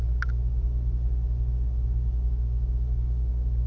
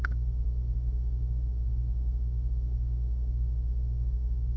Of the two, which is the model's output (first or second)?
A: second